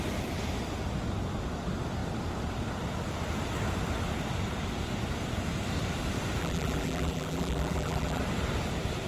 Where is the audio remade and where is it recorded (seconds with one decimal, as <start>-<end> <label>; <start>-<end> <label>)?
0.0-6.4 recorded; 6.4-8.2 remade; 8.2-9.1 recorded